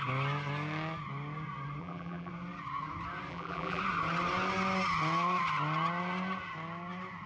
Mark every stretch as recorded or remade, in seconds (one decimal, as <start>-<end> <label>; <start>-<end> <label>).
0.0-1.8 recorded; 1.8-2.3 remade; 2.3-3.3 recorded; 3.3-3.8 remade; 3.8-7.3 recorded